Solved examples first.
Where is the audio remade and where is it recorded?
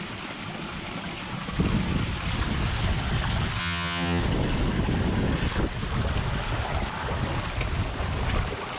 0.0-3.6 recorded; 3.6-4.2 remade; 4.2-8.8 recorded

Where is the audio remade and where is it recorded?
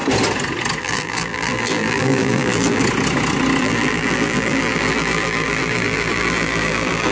0.0-0.8 recorded; 0.8-2.8 remade; 2.8-3.6 recorded; 3.6-7.1 remade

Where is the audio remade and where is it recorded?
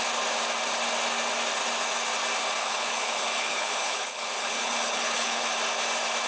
0.0-2.6 recorded; 2.6-5.4 remade; 5.4-6.3 recorded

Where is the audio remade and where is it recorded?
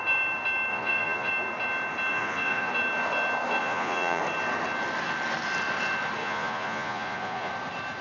0.0-0.7 recorded; 0.7-1.3 remade; 1.3-2.1 recorded; 2.1-2.7 remade; 2.7-3.6 recorded; 3.6-4.2 remade; 4.2-6.2 recorded; 6.2-7.5 remade; 7.5-8.0 recorded